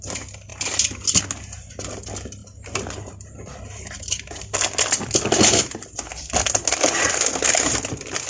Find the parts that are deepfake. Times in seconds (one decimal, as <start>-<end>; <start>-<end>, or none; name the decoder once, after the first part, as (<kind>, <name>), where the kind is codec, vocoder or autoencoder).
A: none